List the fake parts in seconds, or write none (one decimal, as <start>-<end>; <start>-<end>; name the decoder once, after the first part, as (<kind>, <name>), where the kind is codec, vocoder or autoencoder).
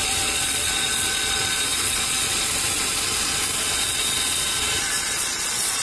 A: 0.0-5.8 (vocoder, Vocos)